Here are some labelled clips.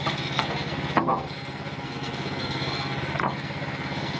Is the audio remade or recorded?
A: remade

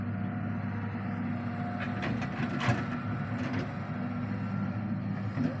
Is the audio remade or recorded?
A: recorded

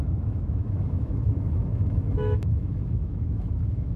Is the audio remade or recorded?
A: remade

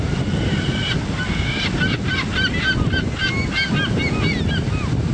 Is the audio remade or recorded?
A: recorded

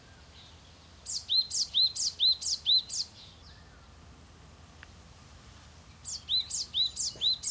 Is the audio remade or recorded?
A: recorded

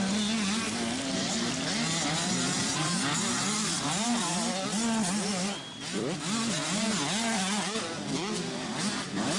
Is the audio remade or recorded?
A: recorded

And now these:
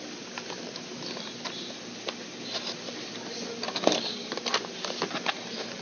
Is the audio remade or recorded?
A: recorded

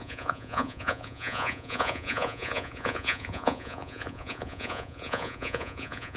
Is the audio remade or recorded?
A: remade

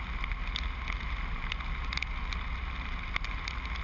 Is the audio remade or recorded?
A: recorded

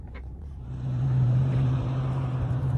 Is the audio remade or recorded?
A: remade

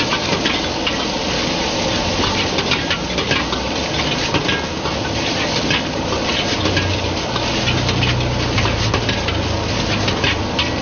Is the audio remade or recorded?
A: recorded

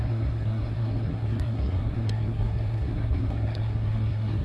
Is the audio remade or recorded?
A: remade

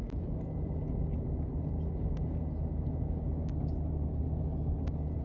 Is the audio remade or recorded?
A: recorded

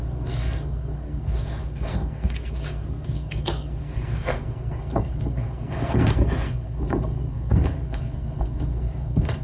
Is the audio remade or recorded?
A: remade